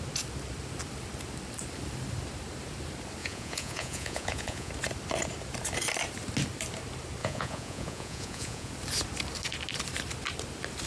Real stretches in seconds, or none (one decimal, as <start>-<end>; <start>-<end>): 0.0-3.2; 4.7-7.2; 8.7-10.9